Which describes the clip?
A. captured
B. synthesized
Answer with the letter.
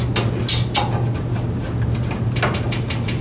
A